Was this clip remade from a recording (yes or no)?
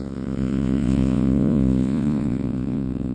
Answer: yes